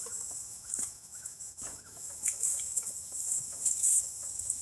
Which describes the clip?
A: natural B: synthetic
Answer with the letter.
B